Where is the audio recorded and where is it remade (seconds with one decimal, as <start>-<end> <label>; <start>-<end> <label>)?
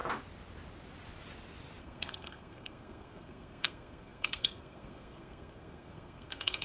0.0-1.8 recorded; 1.8-6.6 remade